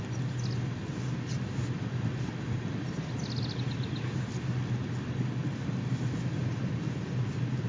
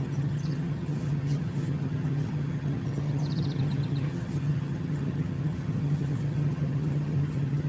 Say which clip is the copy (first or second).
second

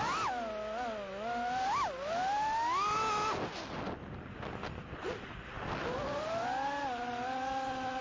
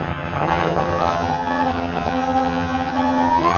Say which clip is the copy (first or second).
second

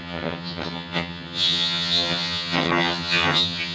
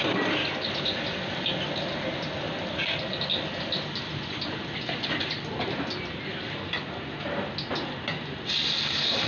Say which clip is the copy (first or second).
first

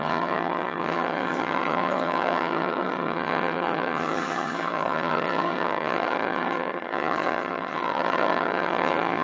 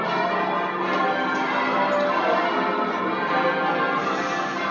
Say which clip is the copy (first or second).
first